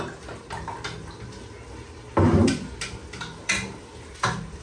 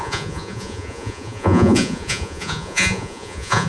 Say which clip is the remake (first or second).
second